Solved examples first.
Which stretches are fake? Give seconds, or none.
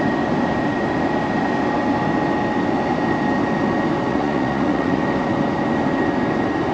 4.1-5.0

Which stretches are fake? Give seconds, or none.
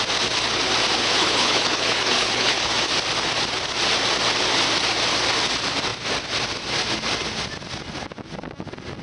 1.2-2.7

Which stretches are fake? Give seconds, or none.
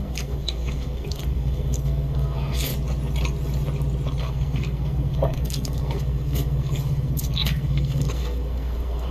0.0-2.7; 4.2-9.1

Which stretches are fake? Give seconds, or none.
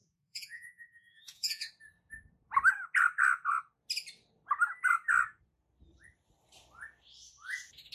0.0-1.7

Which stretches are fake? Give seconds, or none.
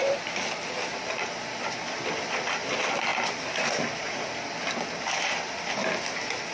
none